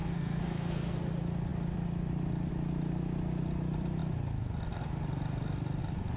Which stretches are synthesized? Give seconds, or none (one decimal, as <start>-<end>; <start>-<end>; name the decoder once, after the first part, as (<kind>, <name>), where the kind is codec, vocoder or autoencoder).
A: 0.0-1.1 (codec, SNAC)